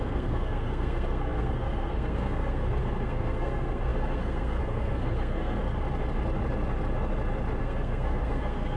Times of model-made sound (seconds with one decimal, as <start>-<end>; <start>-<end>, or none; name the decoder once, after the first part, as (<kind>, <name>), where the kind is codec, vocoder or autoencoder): 0.0-5.6 (codec, SNAC); 7.6-8.8